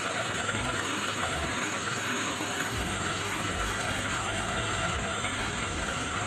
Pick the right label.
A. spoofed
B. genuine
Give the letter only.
A